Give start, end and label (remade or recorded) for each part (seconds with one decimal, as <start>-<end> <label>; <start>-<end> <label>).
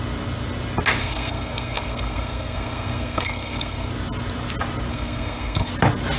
0.0-1.0 recorded; 1.0-3.9 remade; 3.9-4.9 recorded; 4.9-5.7 remade; 5.7-6.2 recorded